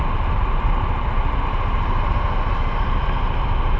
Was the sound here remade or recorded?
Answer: recorded